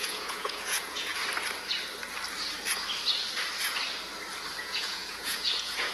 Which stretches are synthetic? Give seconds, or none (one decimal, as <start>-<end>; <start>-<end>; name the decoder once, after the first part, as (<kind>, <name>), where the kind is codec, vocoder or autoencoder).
0.0-1.1 (vocoder, Vocos); 4.6-5.9